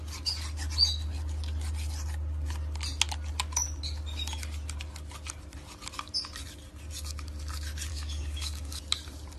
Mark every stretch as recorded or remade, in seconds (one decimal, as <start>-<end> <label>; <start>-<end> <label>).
0.0-7.9 recorded; 7.9-8.8 remade; 8.8-9.4 recorded